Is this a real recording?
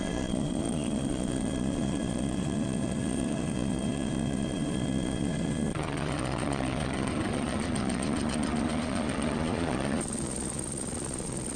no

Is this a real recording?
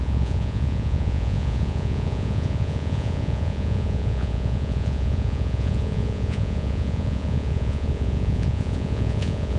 no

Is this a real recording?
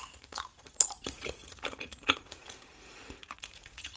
no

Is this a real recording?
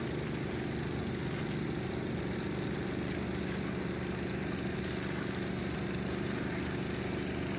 yes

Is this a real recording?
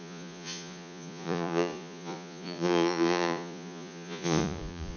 no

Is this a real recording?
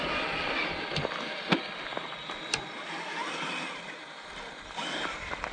yes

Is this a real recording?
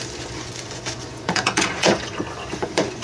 no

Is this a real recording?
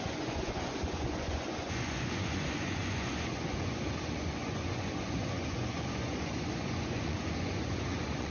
no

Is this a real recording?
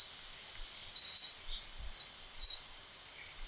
yes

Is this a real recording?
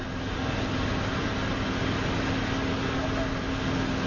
yes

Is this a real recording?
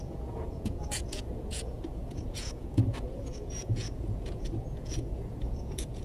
no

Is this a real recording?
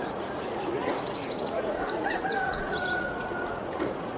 no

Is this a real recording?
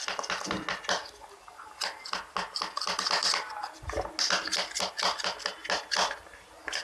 yes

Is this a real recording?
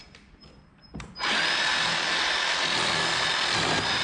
yes